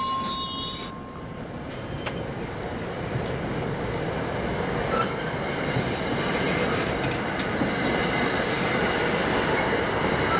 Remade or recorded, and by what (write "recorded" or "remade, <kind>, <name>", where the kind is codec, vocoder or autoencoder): recorded